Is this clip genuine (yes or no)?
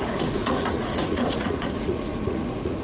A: no